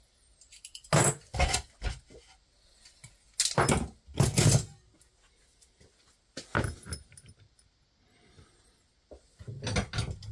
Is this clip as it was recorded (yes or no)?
yes